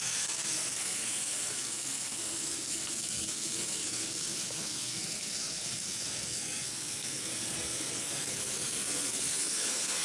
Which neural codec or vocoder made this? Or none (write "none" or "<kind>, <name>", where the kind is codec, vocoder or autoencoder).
codec, SNAC